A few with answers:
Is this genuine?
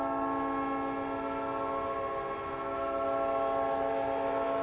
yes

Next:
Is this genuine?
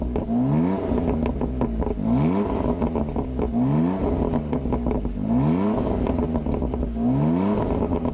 yes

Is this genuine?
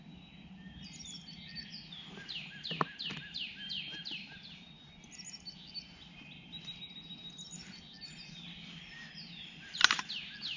yes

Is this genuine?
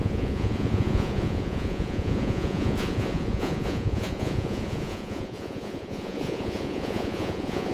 no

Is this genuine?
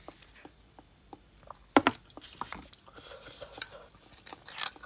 yes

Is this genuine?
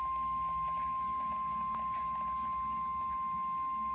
yes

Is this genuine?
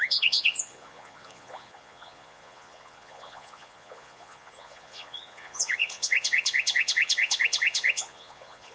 no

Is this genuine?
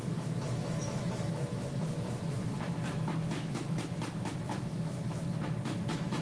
no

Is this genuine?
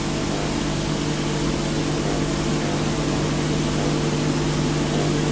yes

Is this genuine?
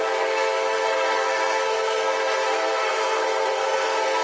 no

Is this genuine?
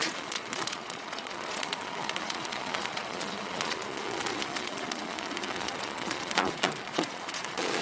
no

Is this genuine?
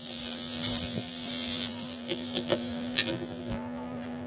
no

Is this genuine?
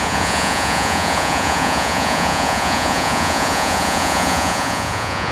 no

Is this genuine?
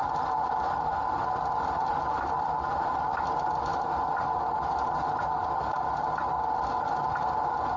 yes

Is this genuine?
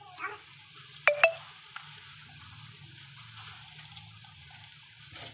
yes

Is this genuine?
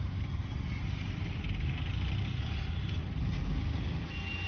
yes